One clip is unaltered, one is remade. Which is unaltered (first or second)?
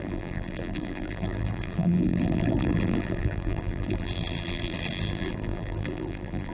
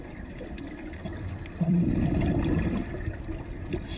second